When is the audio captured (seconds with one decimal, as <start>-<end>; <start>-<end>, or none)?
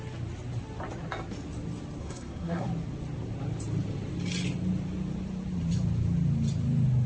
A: 0.0-2.0; 2.7-7.1